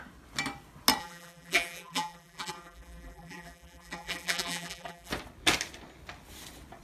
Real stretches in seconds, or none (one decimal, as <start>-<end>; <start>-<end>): 0.0-1.0; 5.1-6.8

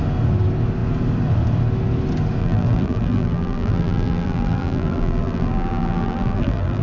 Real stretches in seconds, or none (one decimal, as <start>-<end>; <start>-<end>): 0.0-2.4

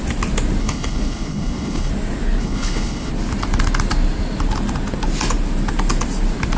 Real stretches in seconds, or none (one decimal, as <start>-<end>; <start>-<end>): 0.0-0.6; 1.9-2.4; 3.1-6.6

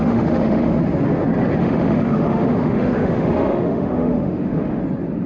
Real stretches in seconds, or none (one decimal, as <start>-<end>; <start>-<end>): 0.7-1.6; 4.8-5.3

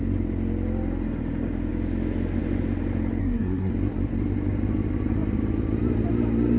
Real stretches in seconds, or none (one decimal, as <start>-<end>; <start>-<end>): 0.0-3.2; 3.7-6.6

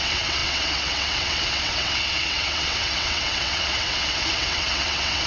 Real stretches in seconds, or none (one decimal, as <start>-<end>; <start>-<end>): none

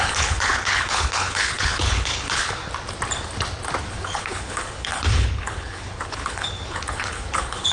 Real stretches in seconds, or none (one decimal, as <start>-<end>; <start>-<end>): 2.6-3.8

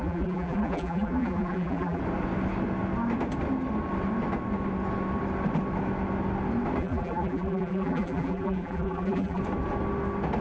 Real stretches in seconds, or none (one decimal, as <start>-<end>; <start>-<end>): 2.0-6.8; 9.4-10.4